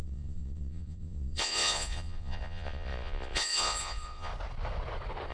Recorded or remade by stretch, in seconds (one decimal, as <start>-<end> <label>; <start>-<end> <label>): 0.0-4.3 remade; 4.3-5.3 recorded